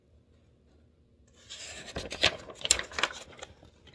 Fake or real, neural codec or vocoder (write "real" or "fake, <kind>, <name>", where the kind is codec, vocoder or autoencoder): real